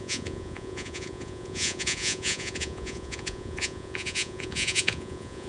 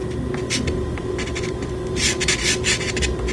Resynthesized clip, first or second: first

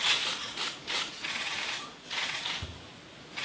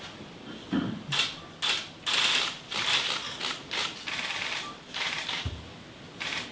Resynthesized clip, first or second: first